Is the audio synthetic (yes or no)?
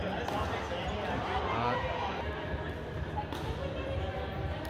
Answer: no